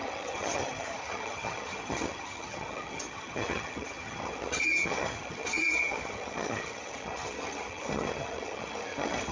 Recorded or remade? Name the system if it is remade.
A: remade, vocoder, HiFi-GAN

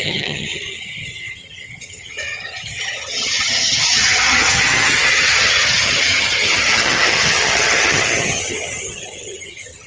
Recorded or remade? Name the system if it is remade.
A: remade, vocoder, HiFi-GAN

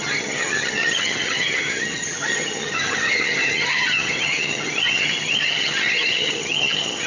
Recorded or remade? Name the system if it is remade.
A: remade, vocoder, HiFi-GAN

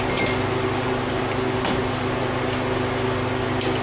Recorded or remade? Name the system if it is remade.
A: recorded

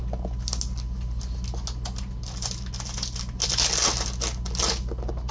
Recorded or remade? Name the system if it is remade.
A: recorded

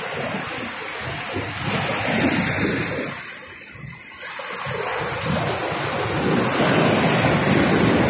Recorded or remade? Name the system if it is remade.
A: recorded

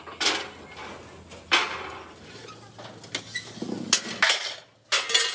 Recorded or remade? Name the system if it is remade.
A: recorded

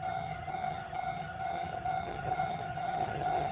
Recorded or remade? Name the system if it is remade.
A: remade, vocoder, HiFi-GAN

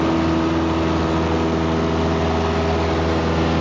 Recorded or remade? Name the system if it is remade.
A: recorded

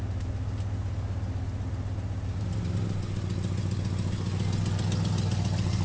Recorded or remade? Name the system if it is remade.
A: recorded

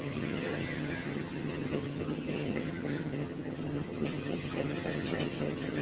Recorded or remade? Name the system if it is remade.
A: remade, vocoder, HiFi-GAN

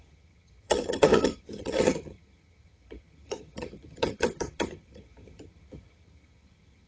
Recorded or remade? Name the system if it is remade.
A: remade, vocoder, HiFi-GAN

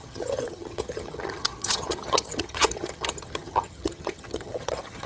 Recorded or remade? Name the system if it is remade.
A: remade, vocoder, HiFi-GAN